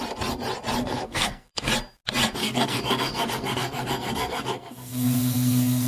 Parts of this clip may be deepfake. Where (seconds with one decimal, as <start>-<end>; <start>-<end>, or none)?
0.8-1.7; 2.4-5.9